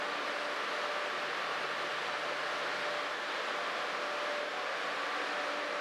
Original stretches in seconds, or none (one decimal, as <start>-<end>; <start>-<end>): 0.0-5.8